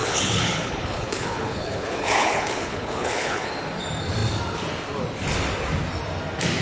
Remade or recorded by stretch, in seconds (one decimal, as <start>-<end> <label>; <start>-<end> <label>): 0.0-3.5 remade; 3.5-6.6 recorded